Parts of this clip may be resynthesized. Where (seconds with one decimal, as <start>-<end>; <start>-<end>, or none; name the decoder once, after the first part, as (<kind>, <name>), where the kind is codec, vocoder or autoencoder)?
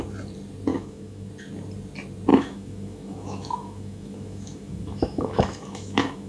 0.7-1.3 (autoencoder, DAC-VAE); 2.3-6.3